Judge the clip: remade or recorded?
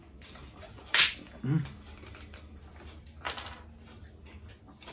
recorded